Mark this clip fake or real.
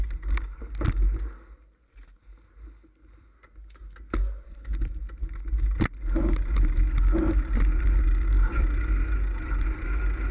real